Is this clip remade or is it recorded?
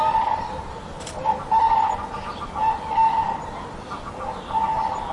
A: recorded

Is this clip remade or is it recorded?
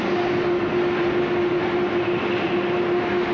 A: recorded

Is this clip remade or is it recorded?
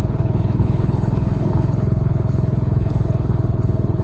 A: remade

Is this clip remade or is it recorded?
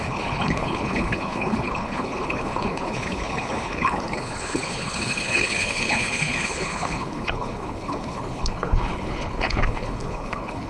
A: remade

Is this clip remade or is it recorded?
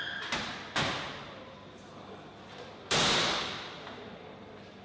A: recorded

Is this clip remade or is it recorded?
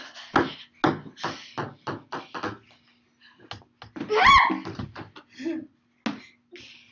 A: recorded